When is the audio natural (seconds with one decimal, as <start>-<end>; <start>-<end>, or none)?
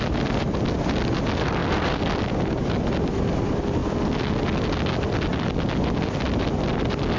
0.0-7.2